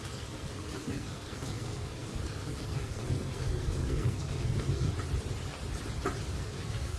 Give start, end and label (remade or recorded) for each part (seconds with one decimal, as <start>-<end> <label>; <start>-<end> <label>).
0.0-4.9 remade; 4.9-6.3 recorded; 6.3-7.0 remade